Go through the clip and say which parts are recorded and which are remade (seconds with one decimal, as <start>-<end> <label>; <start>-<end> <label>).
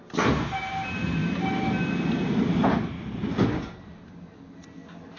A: 0.0-5.2 recorded